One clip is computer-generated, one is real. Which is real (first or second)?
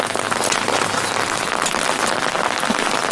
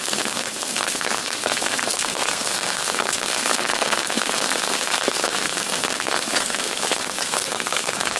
first